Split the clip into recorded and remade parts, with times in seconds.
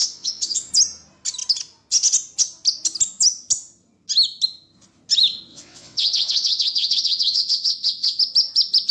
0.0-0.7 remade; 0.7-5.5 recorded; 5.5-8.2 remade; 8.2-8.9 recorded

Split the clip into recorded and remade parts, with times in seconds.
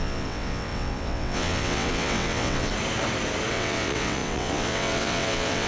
0.0-2.7 remade; 2.7-3.5 recorded; 3.5-5.7 remade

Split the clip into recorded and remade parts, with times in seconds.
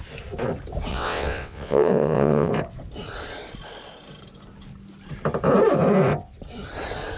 0.0-0.9 recorded; 0.9-2.5 remade; 2.5-7.2 recorded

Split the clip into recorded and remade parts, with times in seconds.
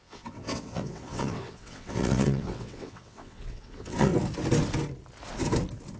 0.0-4.1 remade; 4.1-6.0 recorded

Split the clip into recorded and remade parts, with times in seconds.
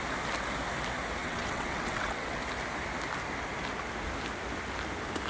0.0-1.2 recorded; 1.2-2.4 remade; 2.4-5.3 recorded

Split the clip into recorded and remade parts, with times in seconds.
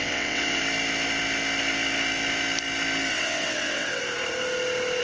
0.0-0.6 remade; 0.6-3.1 recorded; 3.1-4.0 remade; 4.0-5.0 recorded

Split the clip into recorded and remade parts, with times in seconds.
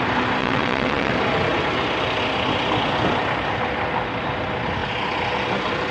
0.0-0.4 recorded; 0.4-1.1 remade; 1.1-5.9 recorded